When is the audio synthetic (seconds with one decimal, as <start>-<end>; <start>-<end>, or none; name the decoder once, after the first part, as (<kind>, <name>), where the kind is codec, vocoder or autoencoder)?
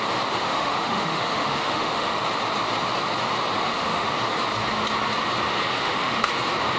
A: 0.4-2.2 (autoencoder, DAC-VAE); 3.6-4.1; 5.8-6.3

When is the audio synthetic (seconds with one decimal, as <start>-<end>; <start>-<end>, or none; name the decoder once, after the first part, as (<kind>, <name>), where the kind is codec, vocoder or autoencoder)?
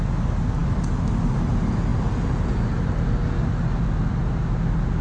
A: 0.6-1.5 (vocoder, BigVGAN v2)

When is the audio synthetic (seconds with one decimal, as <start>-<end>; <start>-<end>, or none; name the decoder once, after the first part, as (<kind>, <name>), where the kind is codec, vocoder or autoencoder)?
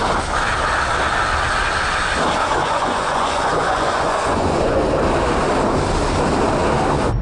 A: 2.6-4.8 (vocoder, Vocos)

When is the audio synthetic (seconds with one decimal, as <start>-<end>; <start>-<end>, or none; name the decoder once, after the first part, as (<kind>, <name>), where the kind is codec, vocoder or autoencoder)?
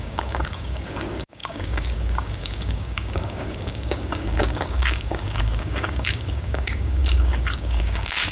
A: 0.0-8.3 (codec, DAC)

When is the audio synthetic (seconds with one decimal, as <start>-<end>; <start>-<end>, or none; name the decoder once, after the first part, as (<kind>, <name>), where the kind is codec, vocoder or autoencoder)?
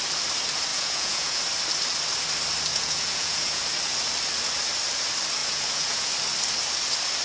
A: 0.7-1.4 (vocoder, Vocos); 2.7-3.6; 5.4-6.1